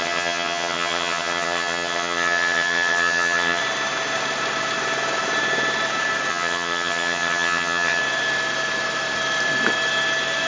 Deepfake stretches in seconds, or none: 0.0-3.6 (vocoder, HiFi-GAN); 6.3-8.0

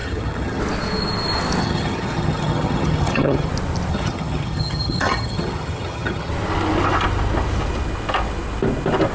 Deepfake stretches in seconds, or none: 0.0-0.6 (vocoder, HiFi-GAN); 1.6-3.5; 3.9-6.3

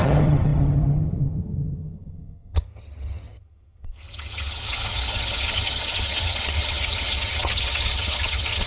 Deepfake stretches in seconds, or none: 0.0-8.7 (vocoder, HiFi-GAN)

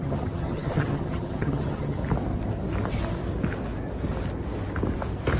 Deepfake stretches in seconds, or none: 0.0-2.0 (vocoder, HiFi-GAN)

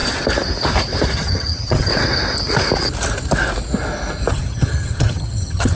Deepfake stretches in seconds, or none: 1.1-1.9 (vocoder, HiFi-GAN); 4.3-5.7

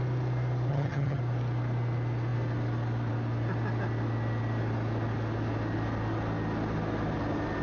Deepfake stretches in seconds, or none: 0.7-1.2 (vocoder, HiFi-GAN)